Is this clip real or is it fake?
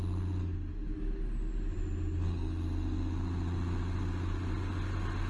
real